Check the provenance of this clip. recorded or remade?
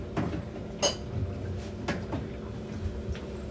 recorded